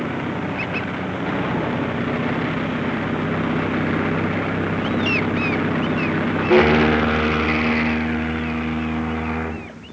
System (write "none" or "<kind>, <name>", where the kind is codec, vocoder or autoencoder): none